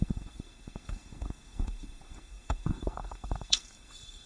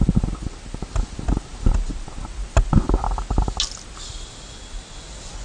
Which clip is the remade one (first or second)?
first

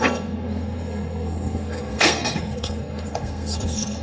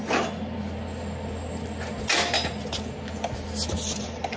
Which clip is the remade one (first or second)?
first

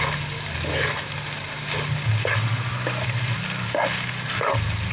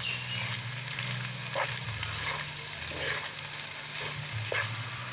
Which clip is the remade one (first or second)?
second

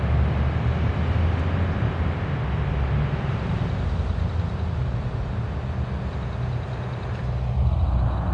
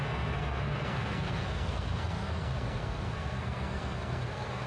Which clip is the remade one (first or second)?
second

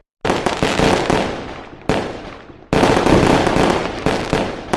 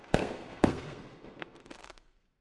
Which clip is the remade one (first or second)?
second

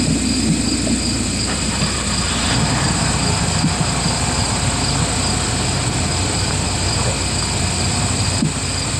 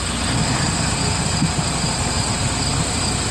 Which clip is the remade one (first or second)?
second